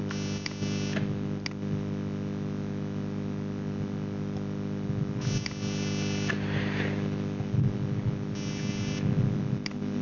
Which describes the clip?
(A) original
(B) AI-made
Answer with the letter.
A